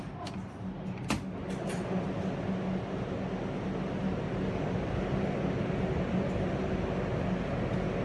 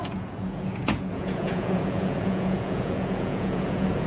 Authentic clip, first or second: first